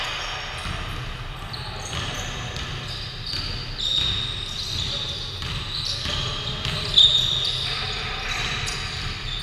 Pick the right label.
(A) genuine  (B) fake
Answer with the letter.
A